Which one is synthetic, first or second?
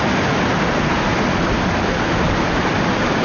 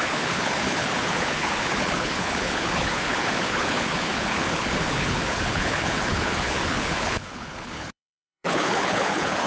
second